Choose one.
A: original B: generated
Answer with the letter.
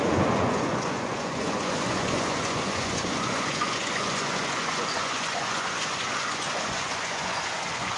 B